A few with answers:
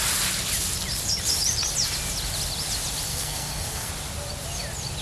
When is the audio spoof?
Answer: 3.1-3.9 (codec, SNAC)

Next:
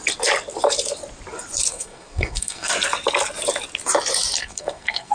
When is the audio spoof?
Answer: 1.7-2.7 (codec, SNAC); 4.4-5.1

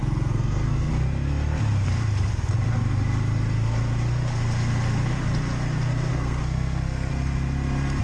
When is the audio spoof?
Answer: 0.0-0.9 (codec, SNAC); 6.1-7.1

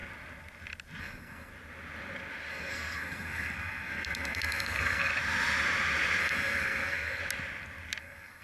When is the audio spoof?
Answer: 1.0-1.5 (codec, SNAC); 2.5-5.1; 6.2-7.2; 8.0-8.4

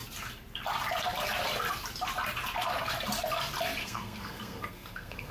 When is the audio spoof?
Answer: 3.8-5.3 (codec, SNAC)

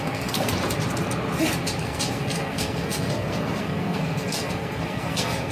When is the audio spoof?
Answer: 0.0-0.5 (codec, SNAC); 1.8-5.5

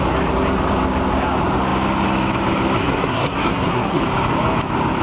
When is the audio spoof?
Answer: 2.8-4.0 (codec, SNAC)

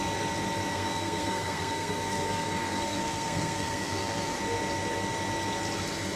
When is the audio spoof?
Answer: 0.7-4.4 (codec, SNAC)